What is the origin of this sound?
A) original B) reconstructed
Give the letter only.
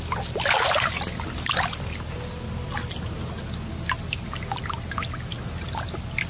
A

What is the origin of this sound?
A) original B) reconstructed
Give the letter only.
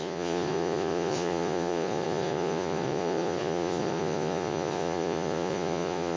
B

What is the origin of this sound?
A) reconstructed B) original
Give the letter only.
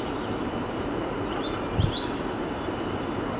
A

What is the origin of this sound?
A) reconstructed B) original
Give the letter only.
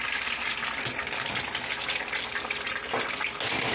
B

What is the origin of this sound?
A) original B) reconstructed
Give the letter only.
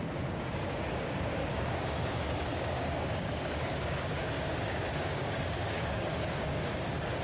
B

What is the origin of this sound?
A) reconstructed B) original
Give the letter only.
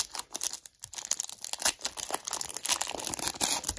B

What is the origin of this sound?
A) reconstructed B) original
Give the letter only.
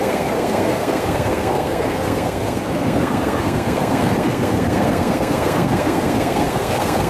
A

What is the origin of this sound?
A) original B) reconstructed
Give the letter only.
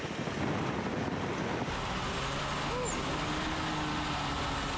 A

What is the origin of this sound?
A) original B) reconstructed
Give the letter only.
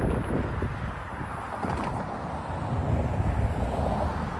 A